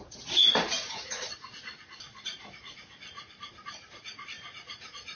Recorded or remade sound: remade